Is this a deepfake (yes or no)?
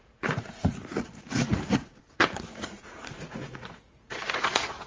yes